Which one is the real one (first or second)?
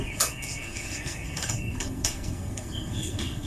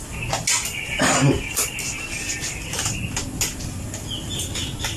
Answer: second